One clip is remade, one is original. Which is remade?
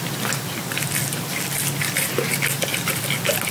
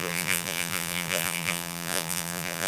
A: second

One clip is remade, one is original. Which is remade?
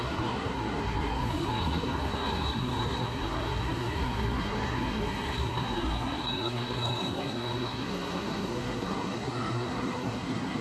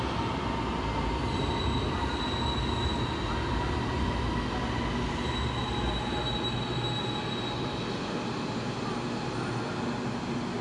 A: first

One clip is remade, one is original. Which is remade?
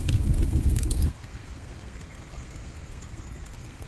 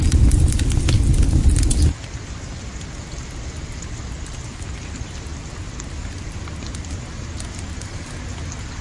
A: first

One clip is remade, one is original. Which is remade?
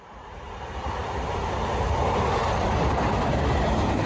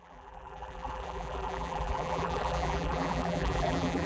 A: second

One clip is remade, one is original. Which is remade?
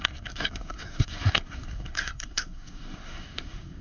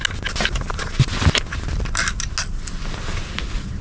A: first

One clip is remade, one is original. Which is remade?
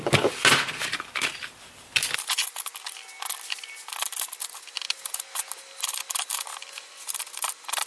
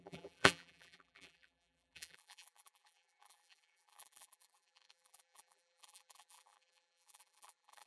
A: second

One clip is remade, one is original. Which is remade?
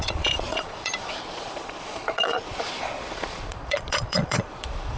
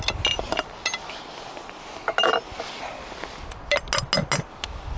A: first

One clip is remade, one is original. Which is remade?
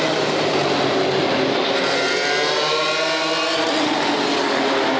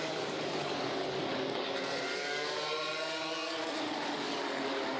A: second